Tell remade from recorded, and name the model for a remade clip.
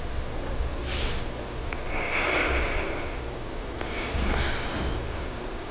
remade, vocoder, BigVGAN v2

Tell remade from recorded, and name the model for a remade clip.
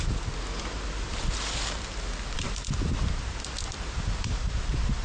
recorded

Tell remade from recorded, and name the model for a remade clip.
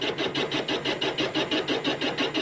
recorded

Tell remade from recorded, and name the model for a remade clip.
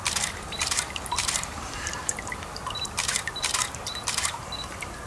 remade, vocoder, BigVGAN v2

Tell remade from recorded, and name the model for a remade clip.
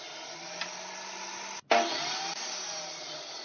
recorded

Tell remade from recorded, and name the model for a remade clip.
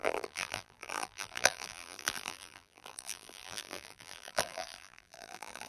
remade, vocoder, BigVGAN v2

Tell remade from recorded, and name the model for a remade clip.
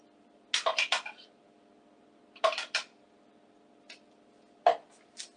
recorded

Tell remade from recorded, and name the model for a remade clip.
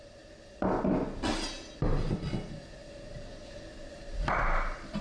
recorded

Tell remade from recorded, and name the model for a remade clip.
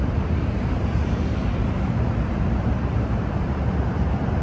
remade, vocoder, BigVGAN v2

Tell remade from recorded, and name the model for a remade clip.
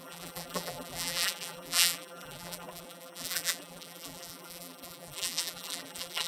remade, vocoder, BigVGAN v2